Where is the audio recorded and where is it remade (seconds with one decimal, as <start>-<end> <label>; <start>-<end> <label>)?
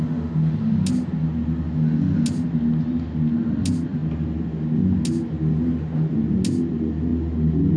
0.0-7.8 recorded